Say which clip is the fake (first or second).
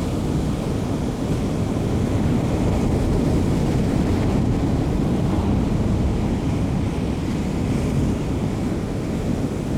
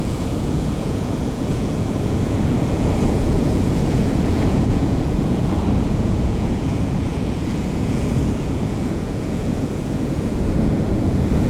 second